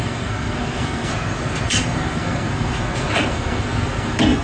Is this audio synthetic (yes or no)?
yes